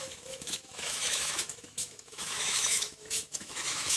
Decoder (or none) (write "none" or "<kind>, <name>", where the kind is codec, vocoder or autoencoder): autoencoder, DAC-VAE